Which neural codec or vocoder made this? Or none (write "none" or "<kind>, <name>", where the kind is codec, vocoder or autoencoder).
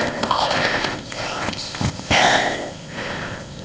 codec, ZipCodec